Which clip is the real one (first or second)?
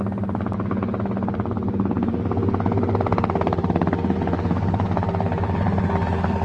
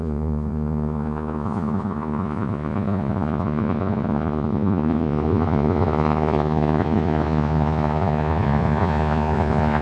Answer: first